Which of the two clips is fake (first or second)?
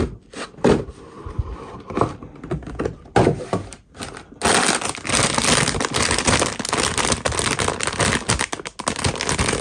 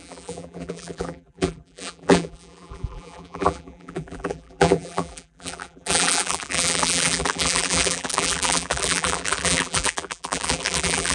second